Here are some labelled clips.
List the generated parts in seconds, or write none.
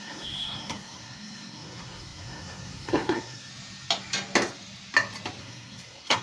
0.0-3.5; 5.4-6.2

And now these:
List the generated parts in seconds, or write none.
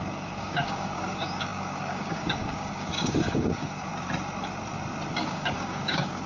0.0-3.9; 5.1-6.3